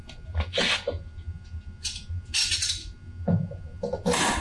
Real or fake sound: real